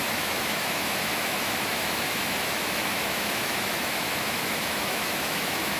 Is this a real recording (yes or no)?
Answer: no